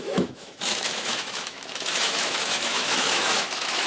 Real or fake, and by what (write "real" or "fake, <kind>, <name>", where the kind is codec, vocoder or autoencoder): fake, autoencoder, DAC-VAE